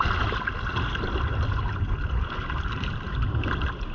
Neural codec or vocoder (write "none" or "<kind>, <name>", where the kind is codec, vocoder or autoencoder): none